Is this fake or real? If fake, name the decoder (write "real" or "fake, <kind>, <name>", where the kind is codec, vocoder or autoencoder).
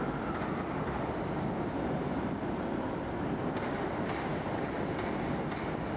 real